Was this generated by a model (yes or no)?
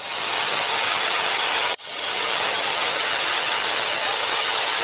yes